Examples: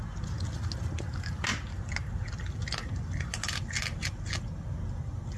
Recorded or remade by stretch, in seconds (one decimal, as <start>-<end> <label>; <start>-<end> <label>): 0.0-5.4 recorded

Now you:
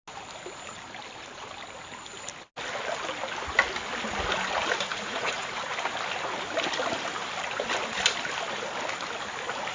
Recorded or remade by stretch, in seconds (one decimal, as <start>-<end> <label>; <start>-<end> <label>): 0.0-4.9 recorded; 4.9-5.6 remade; 5.6-9.7 recorded

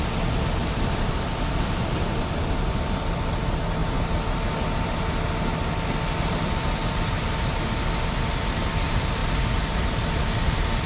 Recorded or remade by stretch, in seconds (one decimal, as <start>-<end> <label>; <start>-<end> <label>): 0.0-0.6 recorded; 0.6-2.2 remade; 2.2-10.9 recorded

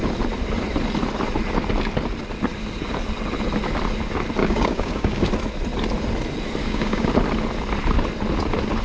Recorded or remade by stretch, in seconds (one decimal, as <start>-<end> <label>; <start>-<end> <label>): 0.0-4.4 recorded; 4.4-5.3 remade; 5.3-6.6 recorded; 6.6-7.1 remade; 7.1-8.8 recorded

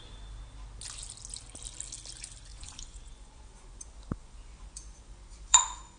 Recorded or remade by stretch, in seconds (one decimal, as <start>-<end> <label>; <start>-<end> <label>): 0.0-2.5 recorded; 2.5-6.0 remade

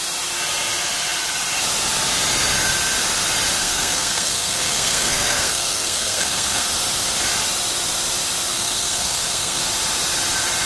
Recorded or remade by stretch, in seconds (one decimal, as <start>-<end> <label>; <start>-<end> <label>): 0.0-3.6 recorded; 3.6-6.6 remade; 6.6-8.5 recorded; 8.5-9.6 remade; 9.6-10.7 recorded